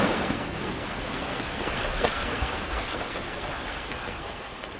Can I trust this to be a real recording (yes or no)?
no